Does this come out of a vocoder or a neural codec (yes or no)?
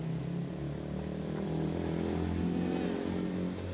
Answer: no